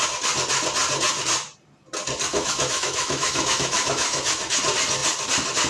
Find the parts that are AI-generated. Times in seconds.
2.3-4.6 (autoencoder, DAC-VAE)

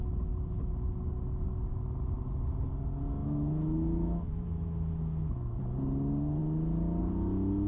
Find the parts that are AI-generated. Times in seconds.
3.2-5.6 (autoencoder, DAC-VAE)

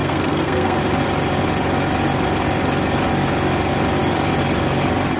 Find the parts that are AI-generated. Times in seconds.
0.0-0.8 (codec, SNAC)

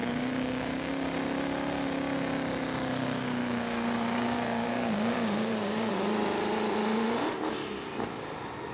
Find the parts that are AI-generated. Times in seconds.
0.0-0.9 (codec, DAC); 3.0-5.9